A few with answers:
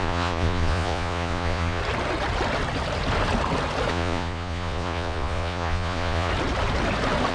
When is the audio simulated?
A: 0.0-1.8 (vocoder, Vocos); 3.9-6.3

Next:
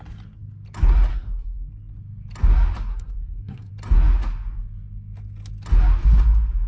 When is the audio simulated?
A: 1.1-1.7 (codec, SNAC); 2.9-3.7